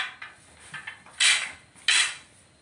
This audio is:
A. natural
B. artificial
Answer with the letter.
A